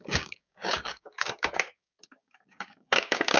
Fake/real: fake